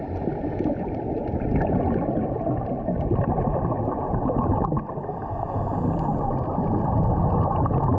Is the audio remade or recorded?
recorded